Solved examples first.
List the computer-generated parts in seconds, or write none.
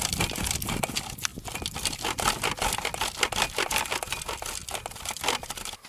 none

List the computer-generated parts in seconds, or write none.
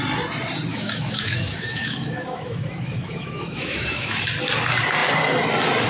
0.7-4.2 (autoencoder, DAC-VAE)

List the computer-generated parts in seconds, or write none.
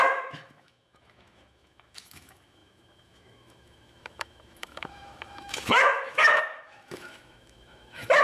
0.0-8.2 (autoencoder, DAC-VAE)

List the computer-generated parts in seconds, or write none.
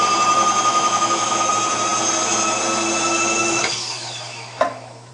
0.7-1.5 (autoencoder, DAC-VAE); 3.4-5.1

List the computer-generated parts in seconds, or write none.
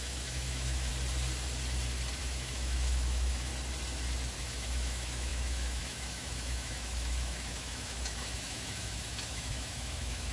0.0-0.9 (autoencoder, DAC-VAE); 2.2-3.5; 4.4-10.3